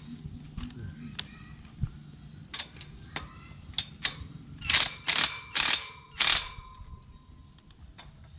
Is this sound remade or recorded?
recorded